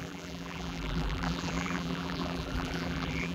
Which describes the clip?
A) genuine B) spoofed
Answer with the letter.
B